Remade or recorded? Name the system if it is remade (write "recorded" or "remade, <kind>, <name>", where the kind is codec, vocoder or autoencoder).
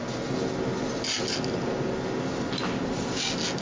recorded